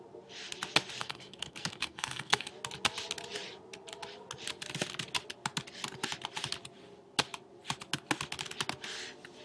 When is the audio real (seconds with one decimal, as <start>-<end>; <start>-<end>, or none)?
0.0-1.0; 2.5-9.4